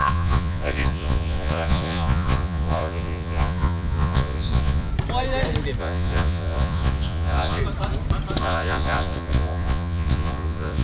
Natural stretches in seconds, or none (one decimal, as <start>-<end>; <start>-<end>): 4.9-5.8; 7.6-8.4